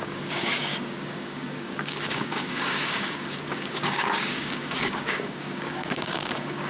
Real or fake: fake